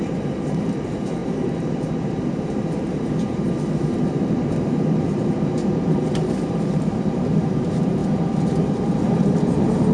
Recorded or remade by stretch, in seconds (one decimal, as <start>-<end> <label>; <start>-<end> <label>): 0.0-8.0 remade; 8.0-8.6 recorded; 8.6-9.9 remade